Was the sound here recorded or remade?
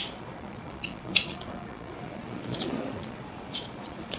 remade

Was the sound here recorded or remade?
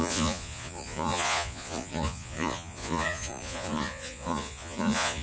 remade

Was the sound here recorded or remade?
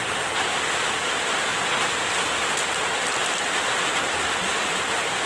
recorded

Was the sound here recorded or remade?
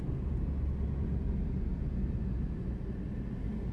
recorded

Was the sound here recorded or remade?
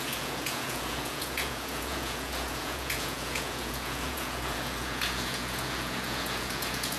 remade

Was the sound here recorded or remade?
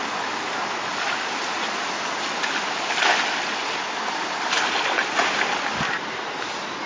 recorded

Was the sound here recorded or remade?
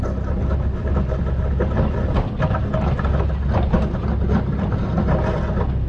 recorded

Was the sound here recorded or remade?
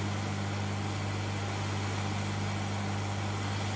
recorded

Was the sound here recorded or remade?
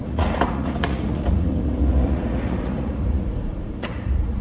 remade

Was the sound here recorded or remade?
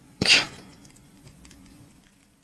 remade